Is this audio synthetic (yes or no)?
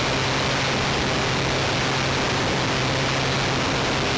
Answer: no